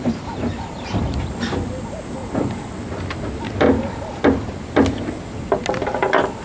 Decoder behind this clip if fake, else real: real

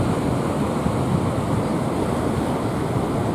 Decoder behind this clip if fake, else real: real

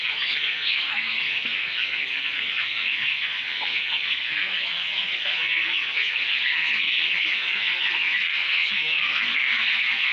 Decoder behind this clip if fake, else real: fake, codec, SNAC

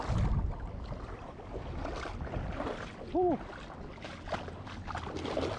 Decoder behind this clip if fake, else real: real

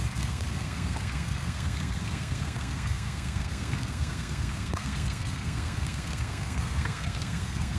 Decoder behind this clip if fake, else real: fake, codec, SNAC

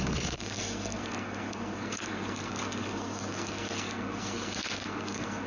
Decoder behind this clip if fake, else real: fake, codec, SNAC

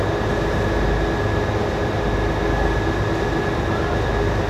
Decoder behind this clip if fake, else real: real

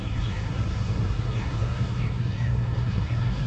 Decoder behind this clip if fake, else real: fake, codec, SNAC